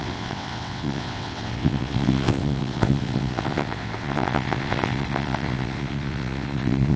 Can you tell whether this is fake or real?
fake